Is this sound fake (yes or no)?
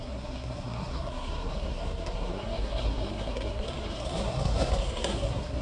yes